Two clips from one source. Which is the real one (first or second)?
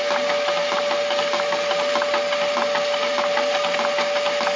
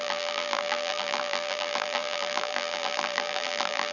first